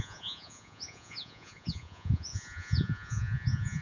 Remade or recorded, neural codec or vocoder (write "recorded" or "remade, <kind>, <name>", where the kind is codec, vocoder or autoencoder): remade, vocoder, Vocos